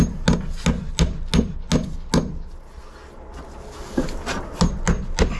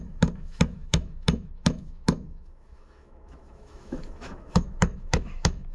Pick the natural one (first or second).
first